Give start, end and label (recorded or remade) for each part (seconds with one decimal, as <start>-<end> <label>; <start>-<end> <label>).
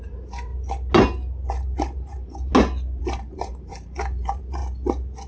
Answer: 0.0-0.5 remade; 0.5-1.5 recorded; 1.5-2.5 remade; 2.5-3.0 recorded; 3.0-4.6 remade; 4.6-5.3 recorded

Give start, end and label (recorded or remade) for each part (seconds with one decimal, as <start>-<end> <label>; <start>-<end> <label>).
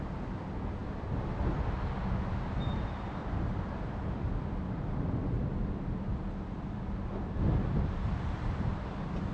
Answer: 0.0-0.8 recorded; 0.8-1.4 remade; 1.4-3.2 recorded; 3.2-6.8 remade; 6.8-7.7 recorded; 7.7-8.7 remade; 8.7-9.3 recorded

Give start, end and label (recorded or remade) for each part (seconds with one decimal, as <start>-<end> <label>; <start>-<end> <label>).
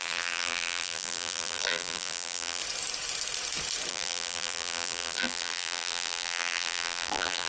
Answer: 0.0-2.6 remade; 2.6-3.9 recorded; 3.9-7.5 remade